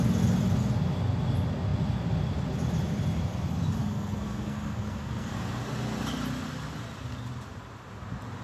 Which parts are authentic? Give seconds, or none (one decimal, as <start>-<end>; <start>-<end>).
0.0-3.8; 5.6-8.4